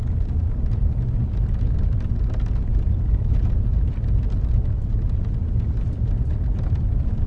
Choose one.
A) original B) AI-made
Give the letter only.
A